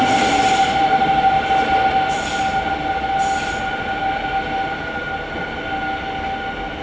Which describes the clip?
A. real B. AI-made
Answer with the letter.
A